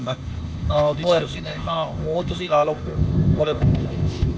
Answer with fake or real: fake